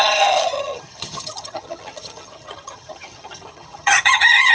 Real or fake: fake